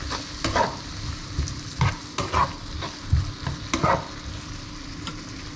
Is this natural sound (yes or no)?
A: yes